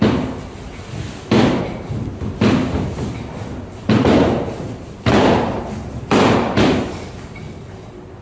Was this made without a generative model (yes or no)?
yes